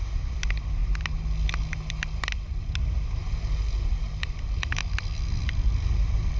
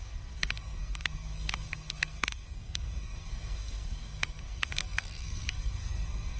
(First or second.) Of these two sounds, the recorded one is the first